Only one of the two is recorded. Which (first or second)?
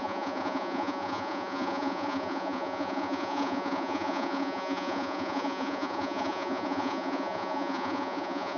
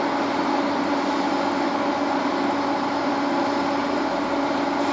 second